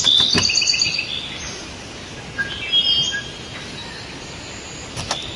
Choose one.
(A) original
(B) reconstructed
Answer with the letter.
A